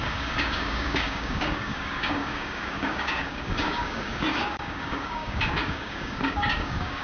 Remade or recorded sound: remade